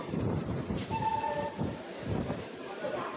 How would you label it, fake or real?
fake